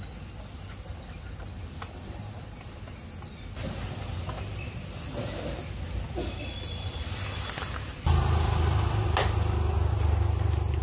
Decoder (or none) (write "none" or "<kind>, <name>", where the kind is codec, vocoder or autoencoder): none